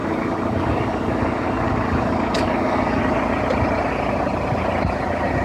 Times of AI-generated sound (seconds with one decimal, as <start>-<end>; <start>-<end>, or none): 0.0-3.0